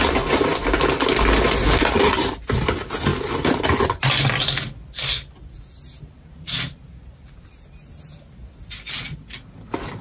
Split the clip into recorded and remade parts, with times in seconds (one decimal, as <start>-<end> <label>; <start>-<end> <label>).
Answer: 0.0-10.0 recorded